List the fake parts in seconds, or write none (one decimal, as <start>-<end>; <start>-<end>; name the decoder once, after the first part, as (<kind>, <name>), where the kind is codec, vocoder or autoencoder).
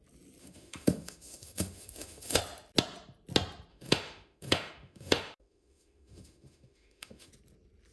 0.4-2.4 (autoencoder, DAC-VAE); 3.7-7.3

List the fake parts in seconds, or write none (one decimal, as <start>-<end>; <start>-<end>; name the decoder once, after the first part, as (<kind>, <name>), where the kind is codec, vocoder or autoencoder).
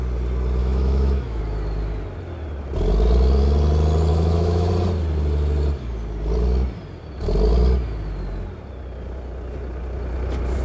0.6-1.4 (autoencoder, DAC-VAE); 4.1-4.7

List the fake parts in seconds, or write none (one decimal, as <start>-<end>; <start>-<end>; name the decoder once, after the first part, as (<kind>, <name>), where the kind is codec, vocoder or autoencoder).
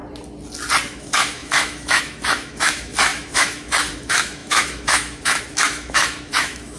0.9-6.8 (autoencoder, DAC-VAE)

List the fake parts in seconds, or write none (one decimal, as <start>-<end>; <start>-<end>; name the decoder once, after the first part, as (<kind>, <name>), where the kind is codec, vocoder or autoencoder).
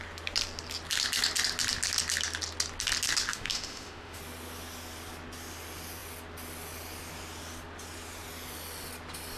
3.3-4.2 (autoencoder, DAC-VAE)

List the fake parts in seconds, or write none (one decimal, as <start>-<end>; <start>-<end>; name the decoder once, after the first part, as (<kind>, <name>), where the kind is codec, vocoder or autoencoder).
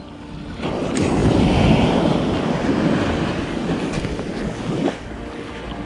none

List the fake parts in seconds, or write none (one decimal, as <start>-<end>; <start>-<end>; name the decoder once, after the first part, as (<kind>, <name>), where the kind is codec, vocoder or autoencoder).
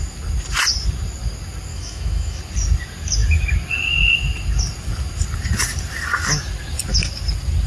1.7-2.4 (autoencoder, DAC-VAE)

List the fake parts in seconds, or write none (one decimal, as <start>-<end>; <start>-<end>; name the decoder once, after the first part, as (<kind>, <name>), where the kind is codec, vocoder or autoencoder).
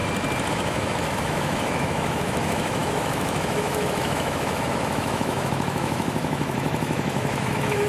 0.5-7.9 (autoencoder, DAC-VAE)